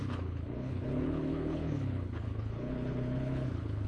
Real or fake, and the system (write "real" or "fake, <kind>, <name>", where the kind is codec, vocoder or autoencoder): fake, codec, HILCodec